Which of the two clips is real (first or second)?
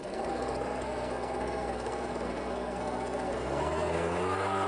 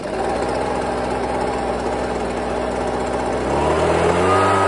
second